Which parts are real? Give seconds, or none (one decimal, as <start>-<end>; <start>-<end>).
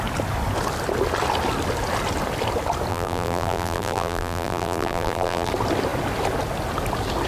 0.0-2.9; 5.5-7.3